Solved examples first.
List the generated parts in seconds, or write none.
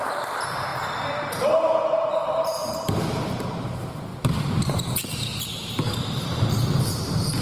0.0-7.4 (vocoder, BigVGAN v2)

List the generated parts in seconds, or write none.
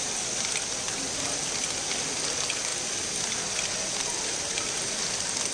none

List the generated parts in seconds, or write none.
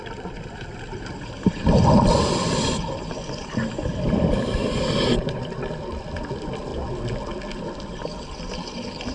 0.0-6.7 (vocoder, BigVGAN v2); 7.9-9.1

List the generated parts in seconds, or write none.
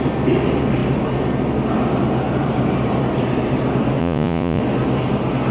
4.0-4.6 (vocoder, Vocos)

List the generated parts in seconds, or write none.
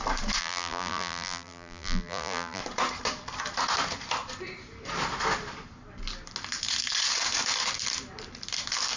0.4-2.6 (vocoder, BigVGAN v2)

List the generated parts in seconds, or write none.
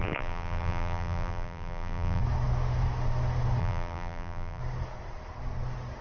0.0-2.2 (vocoder, BigVGAN v2); 3.6-4.6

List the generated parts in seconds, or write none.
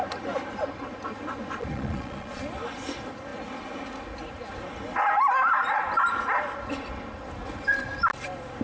1.7-2.4 (vocoder, Vocos)